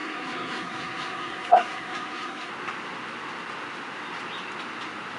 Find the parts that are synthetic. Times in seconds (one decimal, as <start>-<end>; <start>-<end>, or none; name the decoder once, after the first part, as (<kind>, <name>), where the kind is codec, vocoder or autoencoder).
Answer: 0.0-2.5 (codec, SNAC)